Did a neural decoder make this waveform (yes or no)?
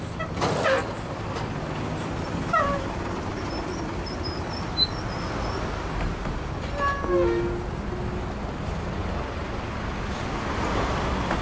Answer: no